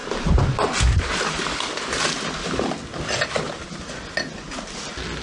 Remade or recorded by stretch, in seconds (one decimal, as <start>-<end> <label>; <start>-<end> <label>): 0.0-5.2 recorded